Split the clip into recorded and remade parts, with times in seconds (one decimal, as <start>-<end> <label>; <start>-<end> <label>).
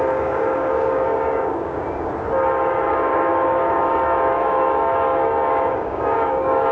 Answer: 0.0-2.1 remade; 2.1-2.9 recorded; 2.9-6.7 remade